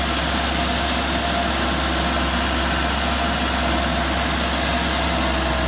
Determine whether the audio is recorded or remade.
recorded